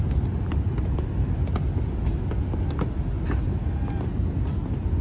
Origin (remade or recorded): recorded